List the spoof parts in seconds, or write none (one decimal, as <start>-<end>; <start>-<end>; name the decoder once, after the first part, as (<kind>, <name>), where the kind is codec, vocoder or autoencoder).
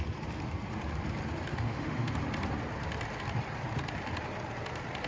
1.5-2.1 (autoencoder, DAC-VAE)